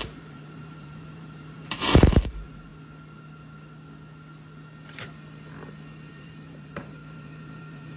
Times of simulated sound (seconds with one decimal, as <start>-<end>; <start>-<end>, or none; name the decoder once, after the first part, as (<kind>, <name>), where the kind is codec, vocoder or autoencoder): 0.0-2.7 (vocoder, BigVGAN v2); 6.1-8.0